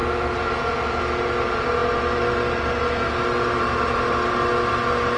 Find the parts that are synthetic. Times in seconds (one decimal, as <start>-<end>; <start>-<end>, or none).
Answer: none